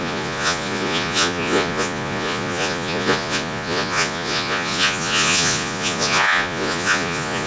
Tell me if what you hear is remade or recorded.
remade